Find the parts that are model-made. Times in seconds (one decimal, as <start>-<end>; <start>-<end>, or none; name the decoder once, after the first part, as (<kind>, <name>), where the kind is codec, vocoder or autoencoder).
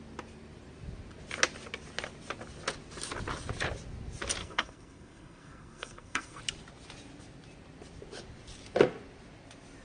4.4-6.4 (codec, SNAC)